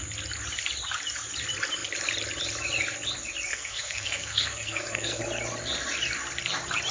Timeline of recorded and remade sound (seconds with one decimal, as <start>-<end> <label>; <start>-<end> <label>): 0.0-3.5 recorded; 3.5-5.2 remade; 5.2-6.9 recorded